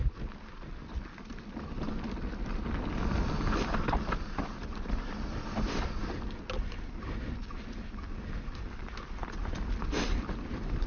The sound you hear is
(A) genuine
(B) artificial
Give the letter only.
A